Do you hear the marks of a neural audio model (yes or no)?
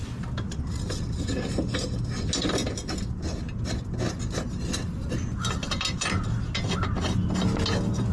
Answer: no